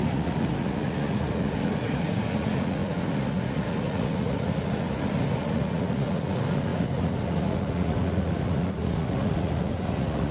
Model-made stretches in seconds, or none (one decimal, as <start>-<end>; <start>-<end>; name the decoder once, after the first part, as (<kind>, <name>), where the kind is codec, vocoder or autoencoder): 0.0-10.3 (vocoder, Vocos)